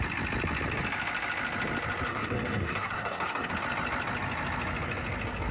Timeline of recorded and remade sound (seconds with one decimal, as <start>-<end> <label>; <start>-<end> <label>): 0.0-2.1 recorded; 2.1-3.5 remade; 3.5-5.5 recorded